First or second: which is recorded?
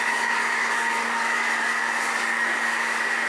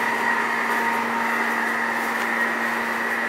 second